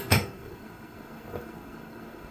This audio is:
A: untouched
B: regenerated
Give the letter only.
B